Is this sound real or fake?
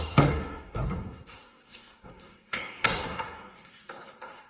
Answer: fake